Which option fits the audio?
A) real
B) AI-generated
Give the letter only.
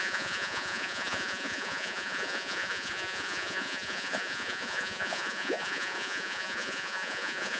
B